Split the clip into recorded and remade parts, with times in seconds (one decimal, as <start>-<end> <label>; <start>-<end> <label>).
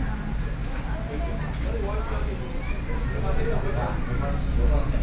0.0-5.0 recorded